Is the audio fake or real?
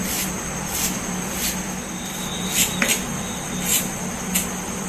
real